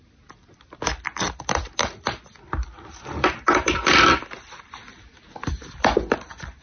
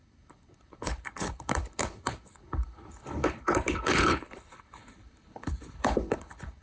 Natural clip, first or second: first